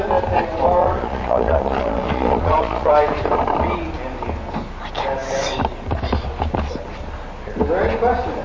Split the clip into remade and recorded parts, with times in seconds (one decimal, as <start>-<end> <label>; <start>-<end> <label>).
0.0-0.8 recorded; 0.8-2.9 remade; 2.9-8.4 recorded